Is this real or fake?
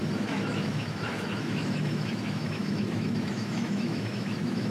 fake